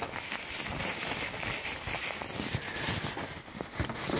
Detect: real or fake real